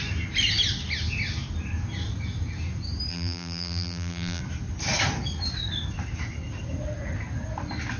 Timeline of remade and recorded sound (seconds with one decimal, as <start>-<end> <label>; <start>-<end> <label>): 0.0-3.1 recorded; 3.1-4.4 remade; 4.4-8.0 recorded